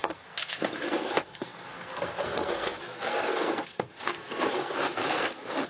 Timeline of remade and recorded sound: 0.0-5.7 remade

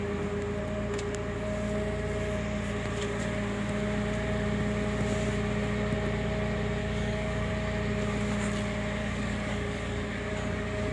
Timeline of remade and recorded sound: 0.0-6.8 recorded; 6.8-7.5 remade; 7.5-9.0 recorded; 9.0-10.9 remade